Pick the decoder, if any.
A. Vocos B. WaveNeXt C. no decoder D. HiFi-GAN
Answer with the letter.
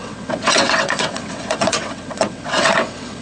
B